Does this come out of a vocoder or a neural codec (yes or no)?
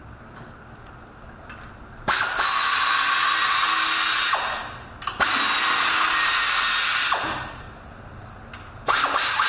no